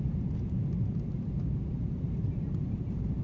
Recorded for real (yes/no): yes